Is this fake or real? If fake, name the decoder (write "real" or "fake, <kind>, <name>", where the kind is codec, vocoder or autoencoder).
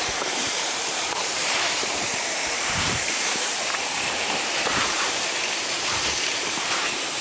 fake, vocoder, BigVGAN v2